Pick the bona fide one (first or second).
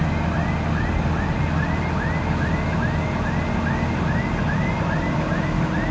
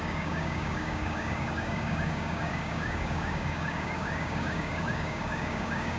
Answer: first